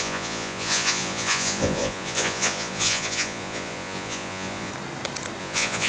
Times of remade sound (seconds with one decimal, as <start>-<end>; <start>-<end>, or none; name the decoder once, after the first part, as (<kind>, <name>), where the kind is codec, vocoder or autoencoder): 0.0-4.7 (vocoder, Vocos); 5.4-5.9

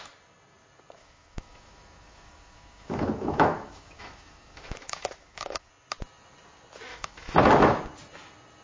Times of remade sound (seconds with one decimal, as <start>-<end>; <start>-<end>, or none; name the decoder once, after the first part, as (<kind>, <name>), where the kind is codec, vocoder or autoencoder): 1.0-5.7 (autoencoder, DAC-VAE); 6.9-7.4

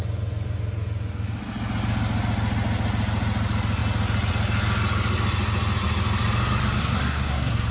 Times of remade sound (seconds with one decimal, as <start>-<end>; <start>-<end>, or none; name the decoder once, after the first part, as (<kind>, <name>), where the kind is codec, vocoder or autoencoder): 6.8-7.7 (codec, SNAC)